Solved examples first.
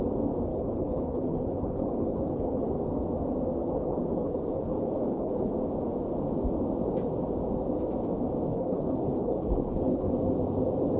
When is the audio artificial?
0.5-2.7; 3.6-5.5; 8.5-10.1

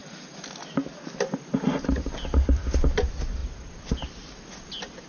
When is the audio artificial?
0.0-3.0; 3.4-3.9

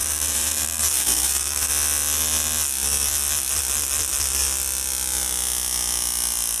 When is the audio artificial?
0.0-1.7

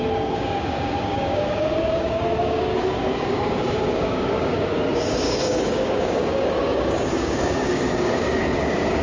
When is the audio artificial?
0.0-9.0

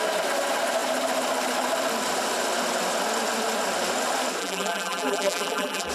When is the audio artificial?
4.4-5.9

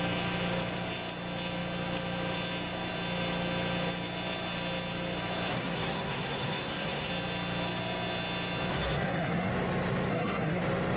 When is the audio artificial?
5.5-7.1; 8.7-9.5; 10.1-10.6

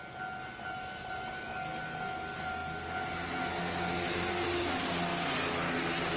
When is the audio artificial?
none

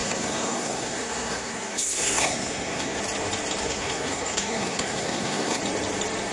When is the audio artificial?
0.0-3.0; 3.6-5.6